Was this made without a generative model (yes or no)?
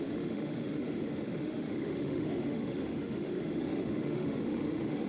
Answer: no